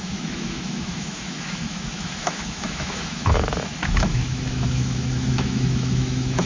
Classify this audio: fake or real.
fake